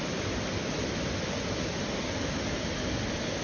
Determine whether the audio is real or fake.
real